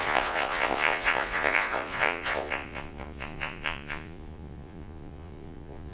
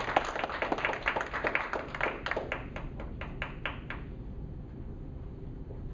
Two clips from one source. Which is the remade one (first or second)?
first